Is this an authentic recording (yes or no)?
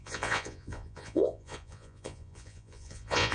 no